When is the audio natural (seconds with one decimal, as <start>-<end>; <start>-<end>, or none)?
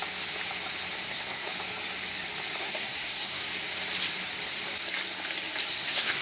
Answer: 0.0-1.1; 1.5-2.6; 3.5-5.7